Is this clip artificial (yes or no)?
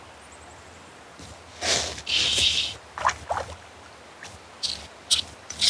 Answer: no